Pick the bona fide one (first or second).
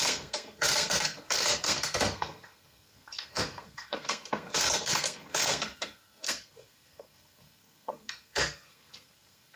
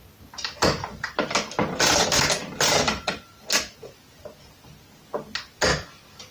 second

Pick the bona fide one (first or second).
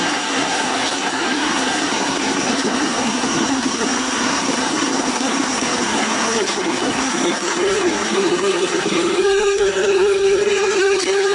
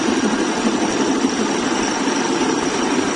second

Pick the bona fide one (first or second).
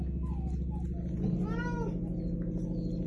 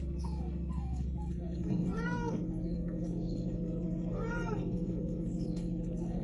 first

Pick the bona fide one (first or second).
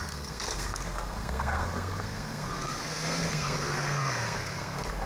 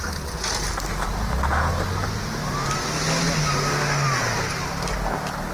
second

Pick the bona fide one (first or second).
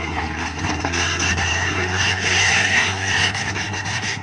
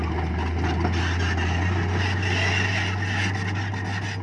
second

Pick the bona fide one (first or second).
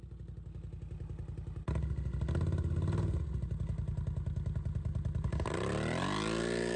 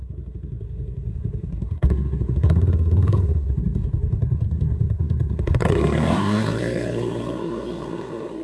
first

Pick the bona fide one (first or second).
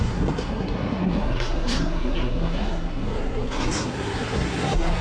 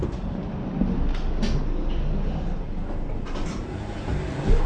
second